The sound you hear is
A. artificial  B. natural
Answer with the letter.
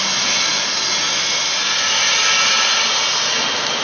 B